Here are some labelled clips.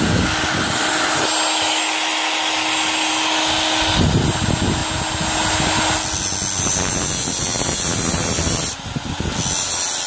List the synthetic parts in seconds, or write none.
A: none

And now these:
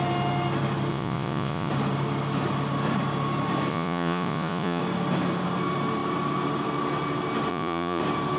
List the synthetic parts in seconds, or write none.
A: 0.9-1.7 (vocoder, Vocos); 3.7-4.8; 7.5-8.0

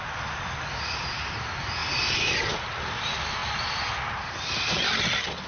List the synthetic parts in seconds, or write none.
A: none